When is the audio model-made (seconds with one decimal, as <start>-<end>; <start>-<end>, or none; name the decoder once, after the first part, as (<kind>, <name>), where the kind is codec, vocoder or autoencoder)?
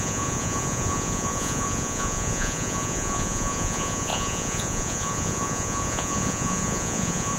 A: 0.0-7.4 (vocoder, Vocos)